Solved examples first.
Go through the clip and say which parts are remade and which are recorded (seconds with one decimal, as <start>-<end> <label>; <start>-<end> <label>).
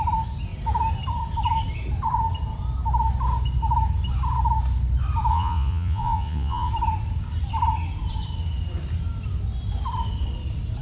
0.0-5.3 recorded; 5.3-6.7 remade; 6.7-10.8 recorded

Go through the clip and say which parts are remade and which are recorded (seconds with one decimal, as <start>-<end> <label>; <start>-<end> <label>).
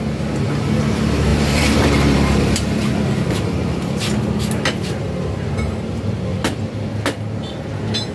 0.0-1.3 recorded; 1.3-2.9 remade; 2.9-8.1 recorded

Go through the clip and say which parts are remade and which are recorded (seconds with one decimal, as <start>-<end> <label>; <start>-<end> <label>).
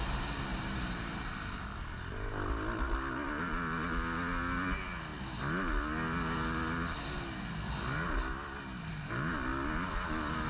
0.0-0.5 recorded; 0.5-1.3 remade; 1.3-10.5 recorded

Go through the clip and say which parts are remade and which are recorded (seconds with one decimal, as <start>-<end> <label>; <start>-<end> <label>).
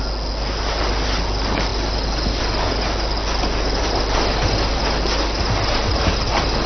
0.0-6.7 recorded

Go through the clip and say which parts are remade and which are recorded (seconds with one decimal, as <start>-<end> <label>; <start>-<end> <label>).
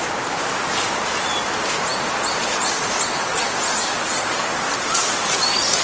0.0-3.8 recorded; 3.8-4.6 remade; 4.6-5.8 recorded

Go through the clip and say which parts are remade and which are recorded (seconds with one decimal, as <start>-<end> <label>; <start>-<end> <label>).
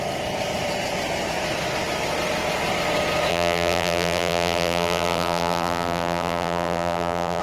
0.0-3.3 recorded; 3.3-7.4 remade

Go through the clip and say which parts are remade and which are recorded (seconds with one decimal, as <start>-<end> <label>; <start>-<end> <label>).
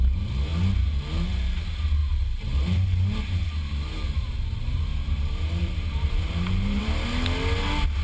0.0-2.0 recorded; 2.0-6.8 remade; 6.8-8.0 recorded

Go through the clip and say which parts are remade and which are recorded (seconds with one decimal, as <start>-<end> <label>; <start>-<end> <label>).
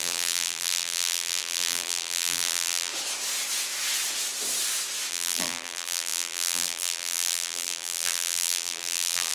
0.0-2.9 remade; 2.9-5.1 recorded; 5.1-9.3 remade